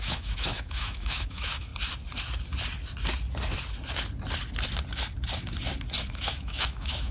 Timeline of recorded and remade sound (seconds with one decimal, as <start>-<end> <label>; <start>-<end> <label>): 0.0-1.7 remade; 1.7-6.0 recorded; 6.0-7.1 remade